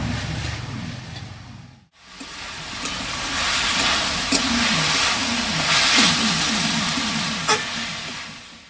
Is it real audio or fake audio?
real